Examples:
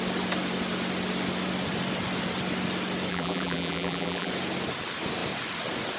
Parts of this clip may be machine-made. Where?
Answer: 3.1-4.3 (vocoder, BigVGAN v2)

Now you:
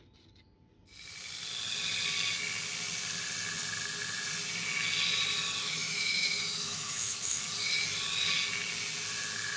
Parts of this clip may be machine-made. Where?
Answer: 5.6-7.4 (autoencoder, DAC-VAE)

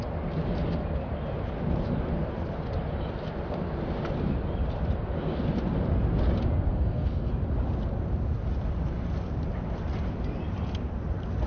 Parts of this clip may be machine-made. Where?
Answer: 6.7-7.3 (codec, SNAC)

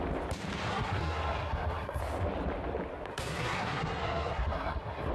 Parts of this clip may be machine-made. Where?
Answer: 0.7-2.0 (codec, SNAC); 3.1-5.1

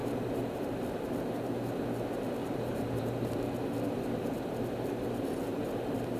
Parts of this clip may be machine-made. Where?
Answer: 0.0-0.6 (vocoder, BigVGAN v2); 2.4-3.4